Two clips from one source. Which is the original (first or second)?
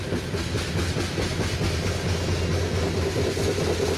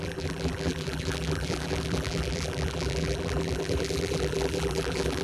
first